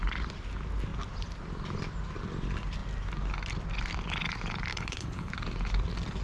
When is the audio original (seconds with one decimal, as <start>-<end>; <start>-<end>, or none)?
0.0-4.7; 5.3-6.2